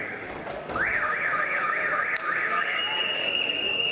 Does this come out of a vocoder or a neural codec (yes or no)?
yes